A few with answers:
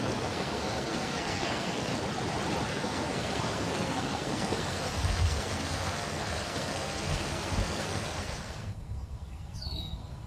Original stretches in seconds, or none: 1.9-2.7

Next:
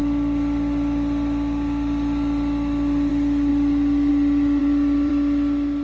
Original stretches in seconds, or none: 0.0-4.6; 5.1-5.8